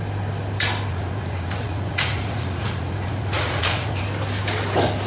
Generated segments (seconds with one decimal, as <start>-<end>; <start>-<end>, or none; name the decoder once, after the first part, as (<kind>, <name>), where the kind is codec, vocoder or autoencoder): 0.9-4.0 (vocoder, Vocos)